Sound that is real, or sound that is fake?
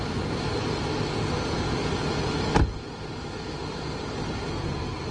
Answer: real